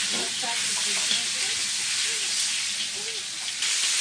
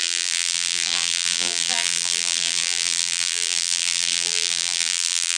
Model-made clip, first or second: second